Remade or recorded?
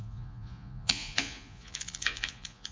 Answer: remade